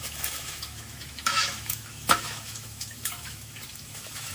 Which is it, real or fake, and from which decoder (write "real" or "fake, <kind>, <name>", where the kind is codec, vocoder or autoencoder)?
fake, autoencoder, DAC-VAE